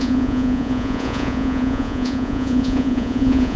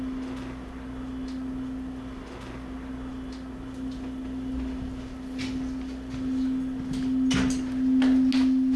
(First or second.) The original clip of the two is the second